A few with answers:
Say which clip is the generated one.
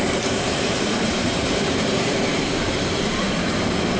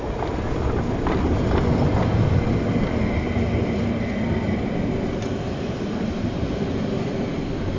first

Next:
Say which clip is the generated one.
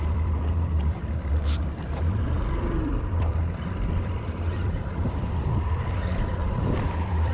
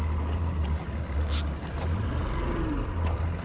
first